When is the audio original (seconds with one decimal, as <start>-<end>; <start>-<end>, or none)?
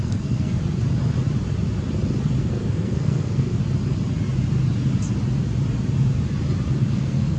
0.6-2.4; 3.6-6.8